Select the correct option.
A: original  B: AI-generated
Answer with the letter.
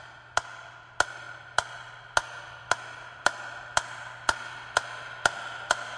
A